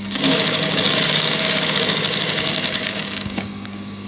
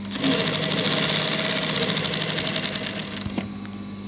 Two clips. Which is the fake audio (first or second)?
first